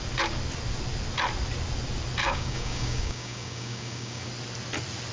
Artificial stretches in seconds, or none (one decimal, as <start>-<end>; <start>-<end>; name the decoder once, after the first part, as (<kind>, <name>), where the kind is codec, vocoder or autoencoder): 2.2-4.3 (codec, DAC)